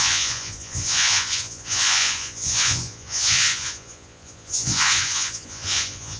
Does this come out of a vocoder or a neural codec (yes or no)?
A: yes